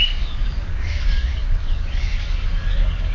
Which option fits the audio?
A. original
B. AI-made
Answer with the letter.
B